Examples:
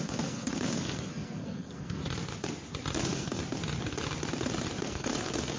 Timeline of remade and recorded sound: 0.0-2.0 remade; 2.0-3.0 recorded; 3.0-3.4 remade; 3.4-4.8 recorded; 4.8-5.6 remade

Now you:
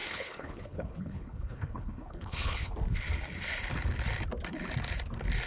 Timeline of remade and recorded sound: 0.0-2.7 remade; 2.7-5.5 recorded

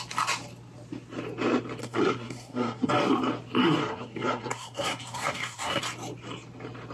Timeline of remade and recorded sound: 0.0-1.8 recorded; 1.8-2.9 remade; 2.9-3.8 recorded; 3.8-5.8 remade; 5.8-6.9 recorded

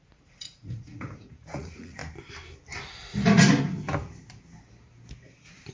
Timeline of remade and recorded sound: 0.0-2.0 remade; 2.0-5.7 recorded

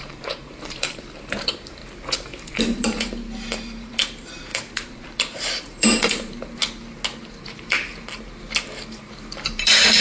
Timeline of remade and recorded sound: 0.0-1.8 remade; 1.8-2.4 recorded; 2.4-6.6 remade; 6.6-7.3 recorded; 7.3-7.9 remade; 7.9-8.9 recorded; 8.9-10.0 remade